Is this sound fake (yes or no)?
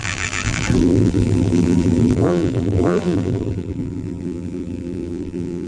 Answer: yes